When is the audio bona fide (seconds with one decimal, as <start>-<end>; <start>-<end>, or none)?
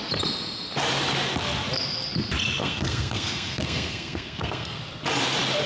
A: 0.0-2.6; 4.8-5.7